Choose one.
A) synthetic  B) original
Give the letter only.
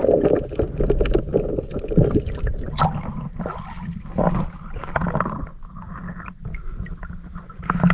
B